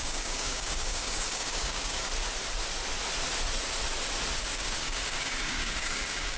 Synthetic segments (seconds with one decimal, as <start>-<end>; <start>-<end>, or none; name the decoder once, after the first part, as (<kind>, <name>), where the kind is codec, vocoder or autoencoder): 0.0-2.1 (codec, DAC); 4.4-6.4